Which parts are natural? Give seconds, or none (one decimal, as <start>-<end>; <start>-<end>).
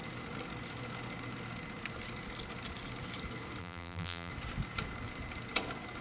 0.0-3.6; 4.3-6.0